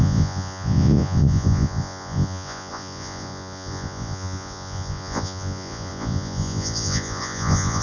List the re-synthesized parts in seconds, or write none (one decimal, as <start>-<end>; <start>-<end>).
0.0-7.8